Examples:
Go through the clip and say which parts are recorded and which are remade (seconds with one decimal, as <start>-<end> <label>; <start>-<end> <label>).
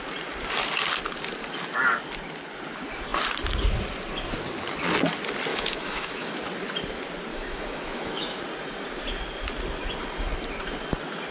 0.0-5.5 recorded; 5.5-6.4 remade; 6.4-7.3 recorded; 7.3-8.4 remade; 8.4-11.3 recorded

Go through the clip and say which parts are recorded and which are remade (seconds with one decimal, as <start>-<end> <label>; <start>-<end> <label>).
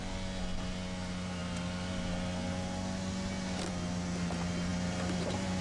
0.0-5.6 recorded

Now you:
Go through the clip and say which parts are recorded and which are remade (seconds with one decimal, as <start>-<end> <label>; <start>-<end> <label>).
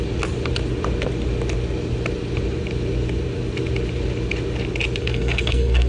0.0-5.0 recorded; 5.0-5.9 remade